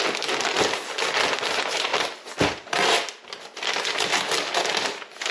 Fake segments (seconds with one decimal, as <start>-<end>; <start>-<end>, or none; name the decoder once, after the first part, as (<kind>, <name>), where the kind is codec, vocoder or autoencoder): none